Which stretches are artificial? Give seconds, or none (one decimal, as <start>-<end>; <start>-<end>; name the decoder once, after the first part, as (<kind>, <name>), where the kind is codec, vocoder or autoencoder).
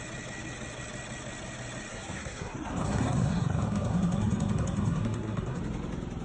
1.9-5.6 (codec, SNAC)